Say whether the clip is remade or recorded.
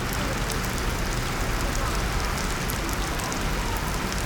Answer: recorded